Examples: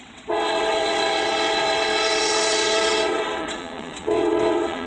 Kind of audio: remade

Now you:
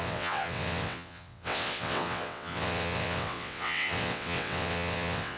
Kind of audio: remade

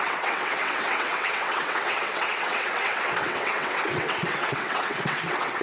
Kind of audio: remade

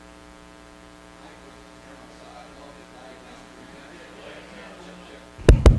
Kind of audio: recorded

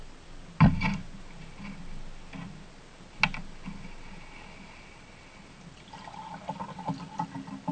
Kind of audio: recorded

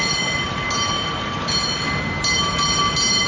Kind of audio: recorded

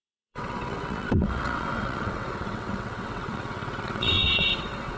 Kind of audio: remade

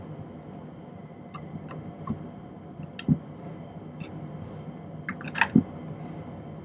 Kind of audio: recorded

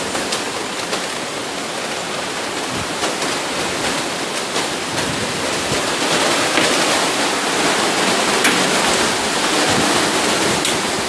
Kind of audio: recorded